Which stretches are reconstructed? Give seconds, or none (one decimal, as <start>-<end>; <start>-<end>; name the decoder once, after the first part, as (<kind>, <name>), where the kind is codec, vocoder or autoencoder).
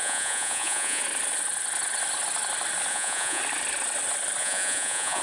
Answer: 0.0-1.0 (vocoder, Vocos); 2.9-3.4; 4.4-5.2